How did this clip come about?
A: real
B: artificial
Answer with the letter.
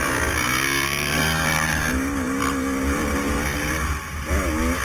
A